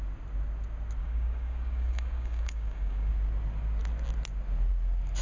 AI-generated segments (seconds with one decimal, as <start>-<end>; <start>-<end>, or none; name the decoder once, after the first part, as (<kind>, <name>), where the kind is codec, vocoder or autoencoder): 1.0-3.1 (codec, DAC)